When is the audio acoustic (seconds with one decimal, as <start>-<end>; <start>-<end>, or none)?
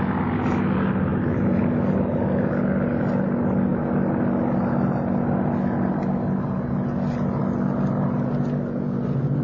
0.0-1.1; 1.6-9.4